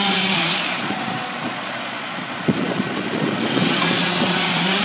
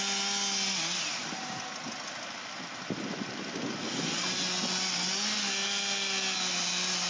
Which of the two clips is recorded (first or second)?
second